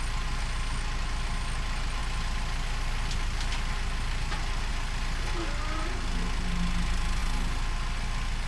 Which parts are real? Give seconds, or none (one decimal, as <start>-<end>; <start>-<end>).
0.0-8.5